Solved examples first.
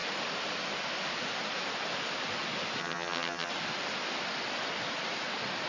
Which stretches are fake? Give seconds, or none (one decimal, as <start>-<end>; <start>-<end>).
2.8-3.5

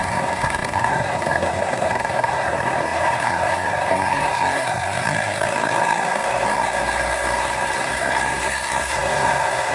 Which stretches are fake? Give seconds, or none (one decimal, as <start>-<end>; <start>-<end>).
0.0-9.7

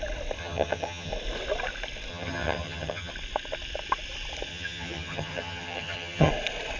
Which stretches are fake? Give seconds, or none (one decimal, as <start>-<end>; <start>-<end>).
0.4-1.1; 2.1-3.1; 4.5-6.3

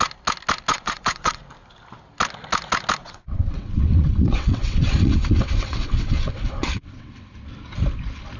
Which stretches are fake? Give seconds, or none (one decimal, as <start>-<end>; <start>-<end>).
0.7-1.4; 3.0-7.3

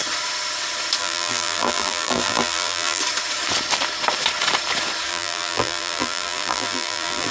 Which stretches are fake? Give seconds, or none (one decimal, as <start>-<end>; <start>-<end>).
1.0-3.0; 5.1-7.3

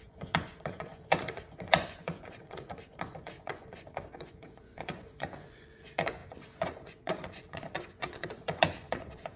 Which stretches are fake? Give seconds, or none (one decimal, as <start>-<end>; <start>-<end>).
0.0-9.4